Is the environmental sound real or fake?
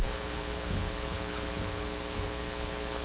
fake